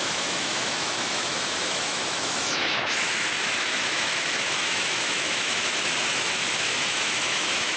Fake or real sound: fake